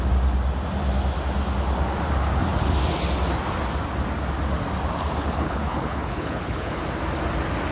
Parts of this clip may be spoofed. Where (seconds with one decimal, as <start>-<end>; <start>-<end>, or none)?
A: 5.2-6.8